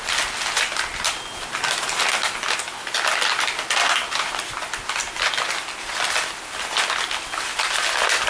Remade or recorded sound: recorded